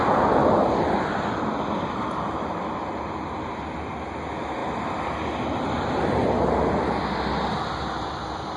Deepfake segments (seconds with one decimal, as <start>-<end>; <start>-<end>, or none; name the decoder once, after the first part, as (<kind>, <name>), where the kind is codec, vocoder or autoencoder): 0.4-3.4 (vocoder, BigVGAN v2); 4.6-6.5